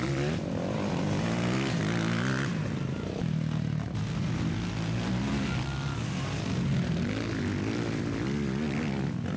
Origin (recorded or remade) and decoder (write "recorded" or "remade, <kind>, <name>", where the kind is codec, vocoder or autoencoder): recorded